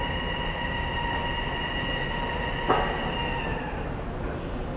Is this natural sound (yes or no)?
yes